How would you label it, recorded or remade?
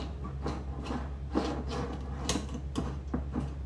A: recorded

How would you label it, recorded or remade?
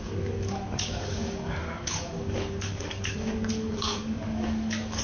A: remade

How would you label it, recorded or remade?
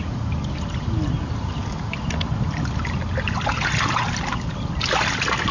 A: recorded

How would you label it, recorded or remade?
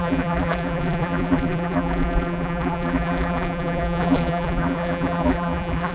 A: remade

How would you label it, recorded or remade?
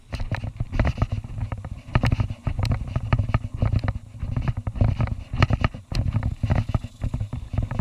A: remade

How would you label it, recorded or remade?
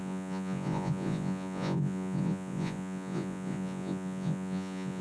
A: remade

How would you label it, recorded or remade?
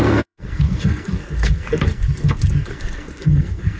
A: remade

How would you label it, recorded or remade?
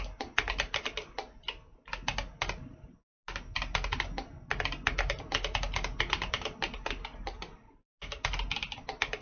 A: recorded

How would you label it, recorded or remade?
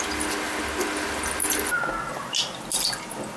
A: recorded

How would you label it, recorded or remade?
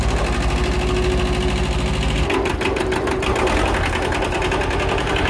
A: recorded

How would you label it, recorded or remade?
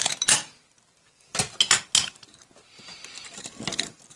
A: recorded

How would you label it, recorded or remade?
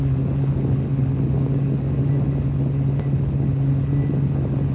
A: recorded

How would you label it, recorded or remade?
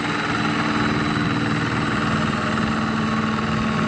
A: recorded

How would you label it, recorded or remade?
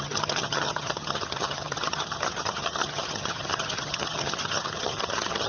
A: remade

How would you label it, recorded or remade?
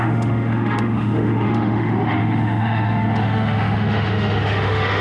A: remade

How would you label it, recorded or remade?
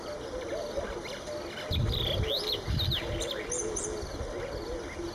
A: recorded